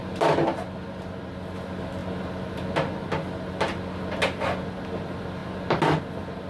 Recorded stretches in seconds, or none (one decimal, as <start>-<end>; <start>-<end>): 0.0-6.5